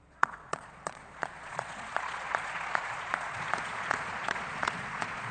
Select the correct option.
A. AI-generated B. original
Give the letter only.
A